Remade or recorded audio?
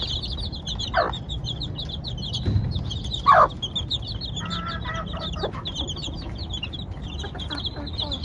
recorded